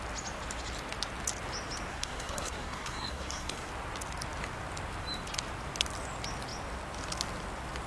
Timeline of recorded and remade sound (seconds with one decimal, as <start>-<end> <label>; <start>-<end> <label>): 0.0-1.9 recorded; 1.9-3.7 remade; 3.7-7.9 recorded